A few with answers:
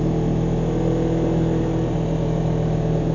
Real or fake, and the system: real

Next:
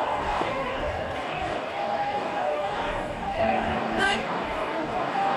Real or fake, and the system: fake, codec, DAC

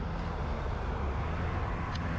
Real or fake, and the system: real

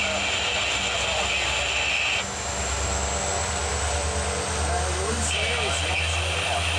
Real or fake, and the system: real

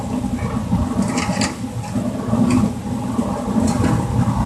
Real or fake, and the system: real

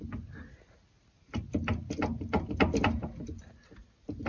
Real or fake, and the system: real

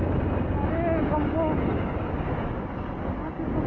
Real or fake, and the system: real